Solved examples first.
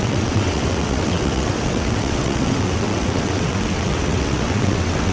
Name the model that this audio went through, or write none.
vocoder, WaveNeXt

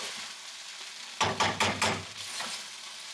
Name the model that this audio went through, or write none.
none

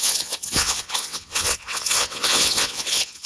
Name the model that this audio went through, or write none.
vocoder, WaveNeXt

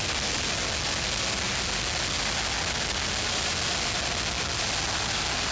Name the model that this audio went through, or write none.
none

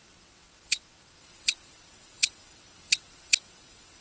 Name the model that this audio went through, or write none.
vocoder, WaveNeXt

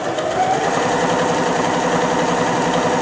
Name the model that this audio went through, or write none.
none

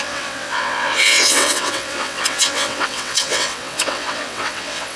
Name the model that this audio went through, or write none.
vocoder, WaveNeXt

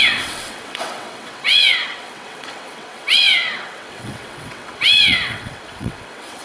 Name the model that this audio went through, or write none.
vocoder, WaveNeXt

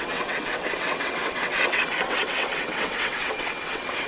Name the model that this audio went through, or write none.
vocoder, WaveNeXt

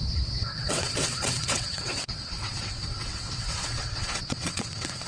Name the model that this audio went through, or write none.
vocoder, WaveNeXt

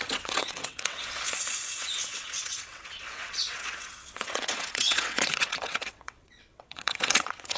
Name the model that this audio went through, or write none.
vocoder, WaveNeXt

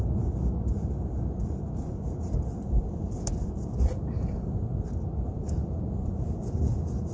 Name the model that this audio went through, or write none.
none